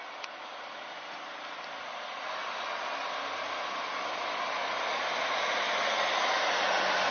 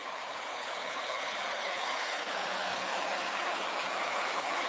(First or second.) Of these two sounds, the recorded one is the first